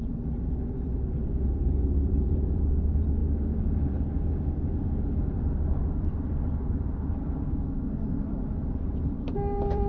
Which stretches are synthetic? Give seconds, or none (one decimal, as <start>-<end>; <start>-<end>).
0.0-3.2; 4.6-9.9